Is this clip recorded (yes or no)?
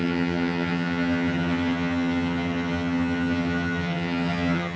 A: no